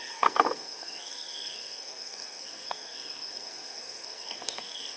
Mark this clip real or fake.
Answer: fake